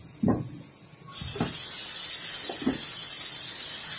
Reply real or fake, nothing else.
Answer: real